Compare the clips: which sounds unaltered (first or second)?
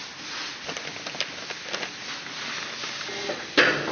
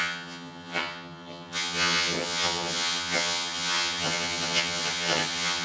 first